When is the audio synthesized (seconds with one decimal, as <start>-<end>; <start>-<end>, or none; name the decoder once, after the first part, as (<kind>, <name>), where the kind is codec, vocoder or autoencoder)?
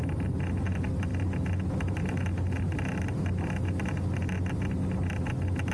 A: none